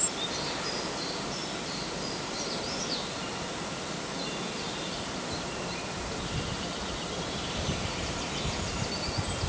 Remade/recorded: recorded